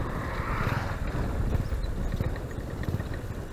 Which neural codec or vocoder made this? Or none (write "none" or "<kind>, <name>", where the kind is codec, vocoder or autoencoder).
none